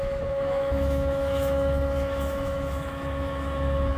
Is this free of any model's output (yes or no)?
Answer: no